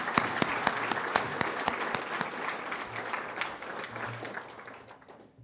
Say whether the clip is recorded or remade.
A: recorded